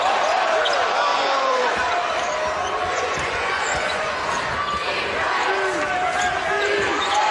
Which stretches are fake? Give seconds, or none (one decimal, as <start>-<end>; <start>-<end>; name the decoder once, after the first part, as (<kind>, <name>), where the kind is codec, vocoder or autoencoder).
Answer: 1.1-1.7 (vocoder, Vocos); 2.6-4.4